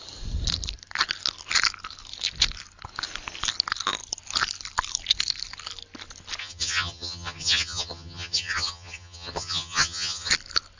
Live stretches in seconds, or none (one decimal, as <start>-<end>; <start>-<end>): 0.0-6.4; 10.3-10.8